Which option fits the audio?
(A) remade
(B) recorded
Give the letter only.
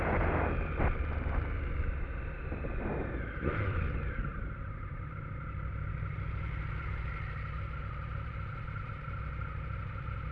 B